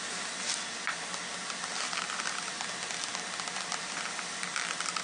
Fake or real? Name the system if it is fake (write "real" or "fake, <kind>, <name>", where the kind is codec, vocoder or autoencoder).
real